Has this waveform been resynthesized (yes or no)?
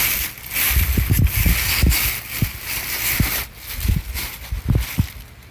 no